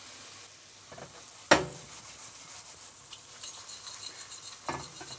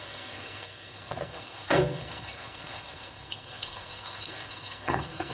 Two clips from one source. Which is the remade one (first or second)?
second